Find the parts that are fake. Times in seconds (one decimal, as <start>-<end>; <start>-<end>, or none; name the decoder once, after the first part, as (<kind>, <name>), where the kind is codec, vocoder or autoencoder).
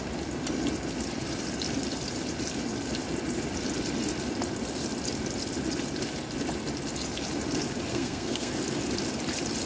7.9-8.5 (codec, SNAC)